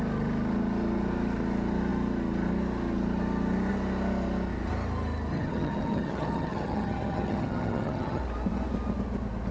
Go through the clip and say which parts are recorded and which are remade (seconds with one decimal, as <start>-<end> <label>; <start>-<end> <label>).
0.0-5.3 recorded; 5.3-8.2 remade; 8.2-9.5 recorded